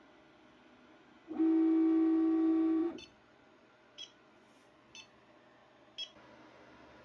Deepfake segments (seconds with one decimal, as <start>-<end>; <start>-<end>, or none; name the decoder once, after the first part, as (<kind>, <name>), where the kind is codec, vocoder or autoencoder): 2.8-4.9 (vocoder, Vocos)